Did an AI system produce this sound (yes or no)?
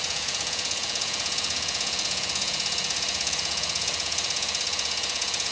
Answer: yes